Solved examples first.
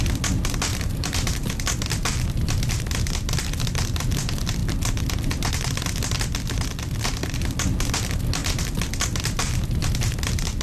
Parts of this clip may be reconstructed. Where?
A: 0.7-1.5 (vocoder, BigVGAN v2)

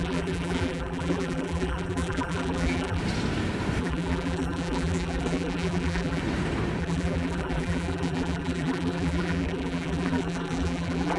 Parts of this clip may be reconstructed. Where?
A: 0.0-3.0 (vocoder, BigVGAN v2); 3.8-6.2; 6.8-11.2

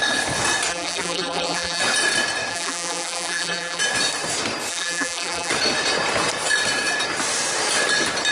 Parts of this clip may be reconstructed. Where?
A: 0.7-1.8 (vocoder, BigVGAN v2); 2.5-3.8; 4.7-5.5

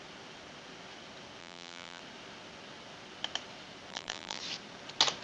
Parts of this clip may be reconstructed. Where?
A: 1.4-2.0 (vocoder, BigVGAN v2); 3.9-4.4

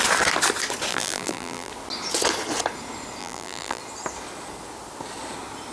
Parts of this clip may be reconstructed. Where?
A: 0.9-1.7 (vocoder, BigVGAN v2); 3.2-3.8

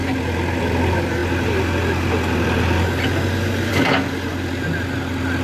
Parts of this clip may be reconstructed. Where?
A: none

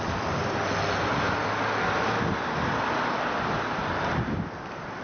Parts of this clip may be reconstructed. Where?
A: none

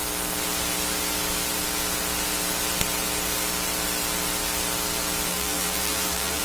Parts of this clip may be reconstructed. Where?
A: 5.3-6.4 (vocoder, BigVGAN v2)